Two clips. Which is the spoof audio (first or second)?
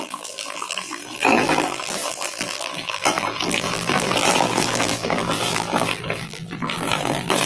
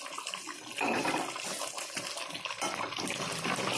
first